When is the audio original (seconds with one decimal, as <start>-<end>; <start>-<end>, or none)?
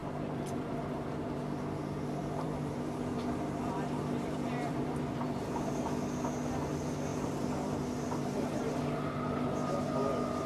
1.4-2.2; 5.8-7.1; 7.8-10.5